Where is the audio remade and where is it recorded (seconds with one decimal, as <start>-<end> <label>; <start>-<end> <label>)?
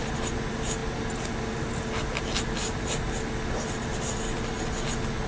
0.0-5.3 recorded